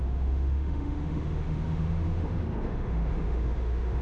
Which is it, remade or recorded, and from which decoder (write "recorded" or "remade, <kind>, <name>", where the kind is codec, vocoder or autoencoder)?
remade, autoencoder, DAC-VAE